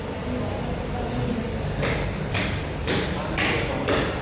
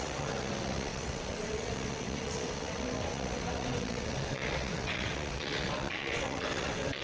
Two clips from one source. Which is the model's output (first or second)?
second